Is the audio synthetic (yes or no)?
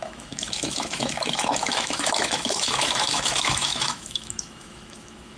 yes